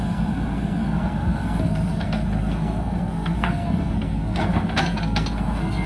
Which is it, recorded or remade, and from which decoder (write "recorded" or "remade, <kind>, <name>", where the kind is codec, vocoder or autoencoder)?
remade, codec, SNAC